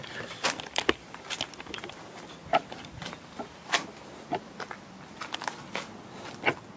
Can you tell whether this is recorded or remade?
recorded